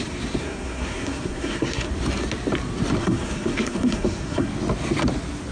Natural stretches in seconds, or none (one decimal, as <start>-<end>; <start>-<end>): 0.0-0.4; 1.9-3.0; 4.5-5.5